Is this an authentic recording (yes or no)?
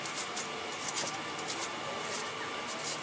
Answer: yes